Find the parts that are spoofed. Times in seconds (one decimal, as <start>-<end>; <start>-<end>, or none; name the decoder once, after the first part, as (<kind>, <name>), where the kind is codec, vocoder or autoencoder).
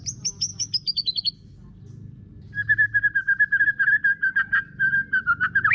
none